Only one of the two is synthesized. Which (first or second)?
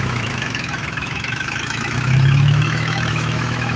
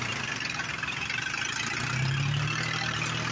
first